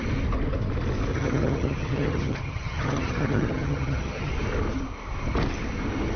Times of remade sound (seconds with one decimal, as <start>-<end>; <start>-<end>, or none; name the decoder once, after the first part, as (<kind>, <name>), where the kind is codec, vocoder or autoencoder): 1.1-4.3 (vocoder, HiFi-GAN)